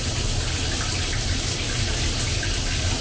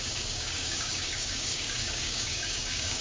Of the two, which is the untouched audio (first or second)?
first